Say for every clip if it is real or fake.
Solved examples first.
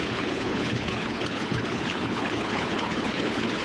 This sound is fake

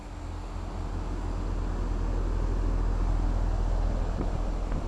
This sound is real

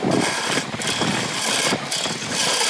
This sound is real